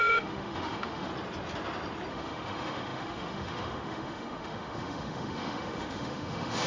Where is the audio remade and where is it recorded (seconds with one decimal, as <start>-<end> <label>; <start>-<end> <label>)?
0.0-1.1 remade; 1.1-2.1 recorded; 2.1-6.7 remade